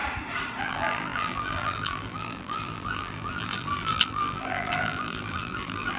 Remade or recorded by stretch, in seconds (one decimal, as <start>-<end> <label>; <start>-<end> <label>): 0.0-0.6 recorded; 0.6-6.0 remade